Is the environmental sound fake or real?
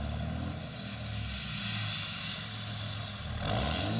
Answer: real